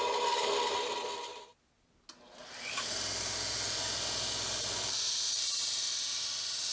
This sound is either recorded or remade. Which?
recorded